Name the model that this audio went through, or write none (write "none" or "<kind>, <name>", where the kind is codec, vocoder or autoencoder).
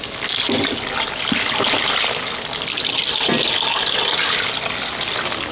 none